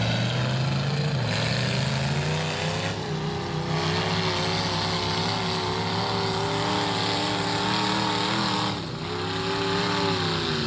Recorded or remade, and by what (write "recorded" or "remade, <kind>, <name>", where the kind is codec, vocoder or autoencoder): recorded